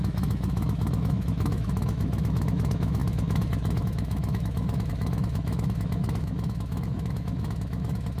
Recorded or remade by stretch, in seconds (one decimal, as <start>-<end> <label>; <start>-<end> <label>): 0.0-8.2 remade